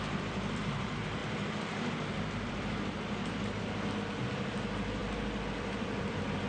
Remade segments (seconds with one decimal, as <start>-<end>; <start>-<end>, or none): 0.0-6.5